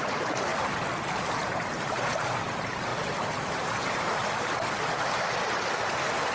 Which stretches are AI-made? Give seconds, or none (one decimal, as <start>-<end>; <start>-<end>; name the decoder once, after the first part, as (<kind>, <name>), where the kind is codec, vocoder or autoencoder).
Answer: 0.0-0.5 (vocoder, BigVGAN v2); 1.3-2.9; 3.5-4.2